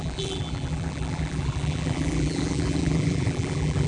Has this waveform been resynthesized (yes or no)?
yes